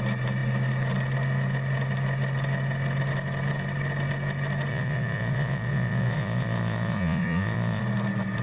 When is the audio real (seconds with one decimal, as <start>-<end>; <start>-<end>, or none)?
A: 0.0-4.7; 7.8-8.4